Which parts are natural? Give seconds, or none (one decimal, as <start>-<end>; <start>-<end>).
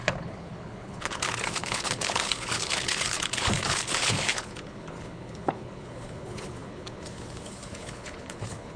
none